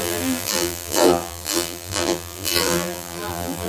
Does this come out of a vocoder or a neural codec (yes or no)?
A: yes